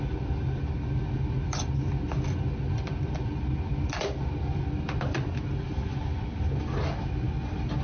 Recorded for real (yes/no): yes